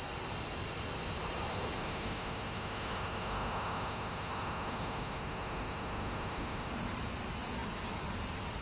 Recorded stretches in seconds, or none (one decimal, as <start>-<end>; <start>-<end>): 0.0-1.8; 6.7-8.6